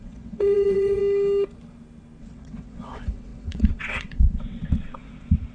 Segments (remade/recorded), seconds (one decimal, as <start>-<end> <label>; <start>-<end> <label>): 0.0-1.0 remade; 1.0-2.2 recorded; 2.2-5.5 remade